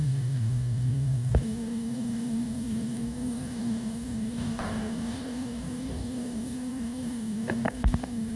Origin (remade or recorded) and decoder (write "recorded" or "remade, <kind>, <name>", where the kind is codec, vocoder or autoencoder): remade, codec, DAC